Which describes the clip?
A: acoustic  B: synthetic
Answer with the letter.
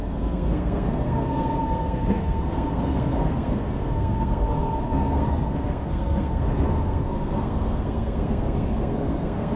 B